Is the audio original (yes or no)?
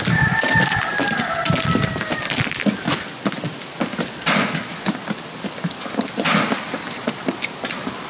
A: yes